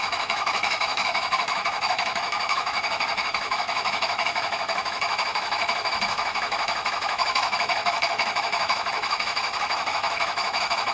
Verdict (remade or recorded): remade